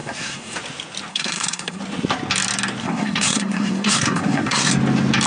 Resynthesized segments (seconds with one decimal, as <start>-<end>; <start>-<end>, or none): 0.0-0.6; 1.1-1.8; 2.8-4.7